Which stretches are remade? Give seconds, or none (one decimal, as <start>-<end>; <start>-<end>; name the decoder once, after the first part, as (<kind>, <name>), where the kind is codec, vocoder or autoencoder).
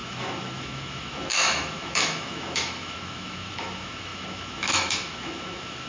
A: 0.0-5.9 (autoencoder, DAC-VAE)